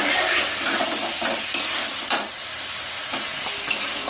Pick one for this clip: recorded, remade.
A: recorded